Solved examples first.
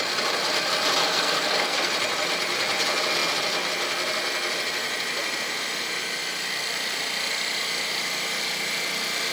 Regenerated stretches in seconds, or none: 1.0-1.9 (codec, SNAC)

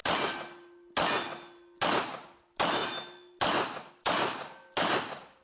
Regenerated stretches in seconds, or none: none

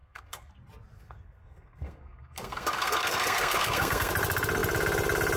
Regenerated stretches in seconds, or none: 0.0-0.5 (codec, SNAC); 0.9-4.1

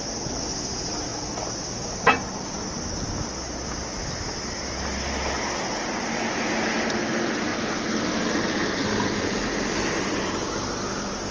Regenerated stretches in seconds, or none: none

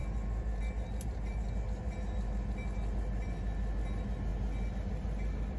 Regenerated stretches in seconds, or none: none

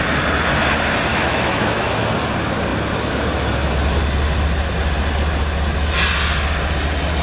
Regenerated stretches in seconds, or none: 1.1-2.1 (autoencoder, DAC-VAE)

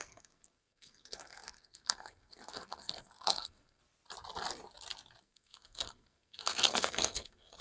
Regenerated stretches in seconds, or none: 0.0-3.8 (codec, SNAC); 5.2-7.6